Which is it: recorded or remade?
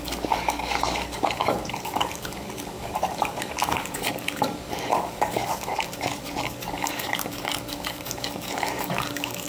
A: remade